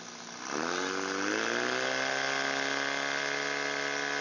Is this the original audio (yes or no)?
yes